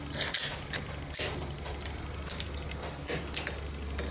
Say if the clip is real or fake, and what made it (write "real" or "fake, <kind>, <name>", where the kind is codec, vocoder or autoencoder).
real